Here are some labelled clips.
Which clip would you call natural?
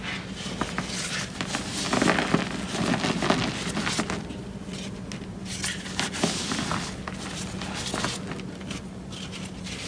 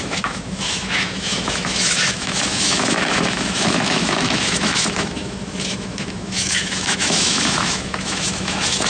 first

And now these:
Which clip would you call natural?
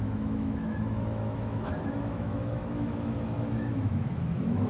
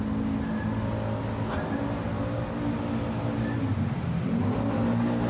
second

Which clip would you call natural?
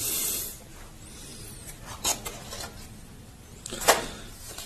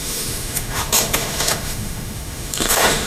first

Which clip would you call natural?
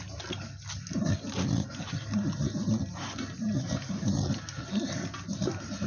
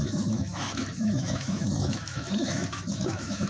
first